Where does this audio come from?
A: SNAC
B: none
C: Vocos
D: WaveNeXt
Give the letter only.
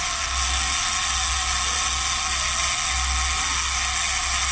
B